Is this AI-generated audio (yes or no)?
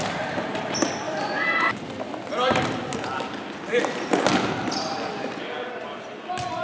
no